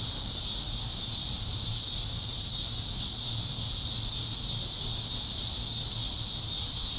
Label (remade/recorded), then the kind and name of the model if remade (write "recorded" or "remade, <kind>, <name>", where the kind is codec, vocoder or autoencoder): recorded